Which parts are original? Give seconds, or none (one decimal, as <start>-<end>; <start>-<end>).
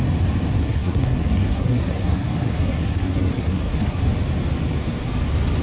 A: 0.0-0.6; 4.0-5.6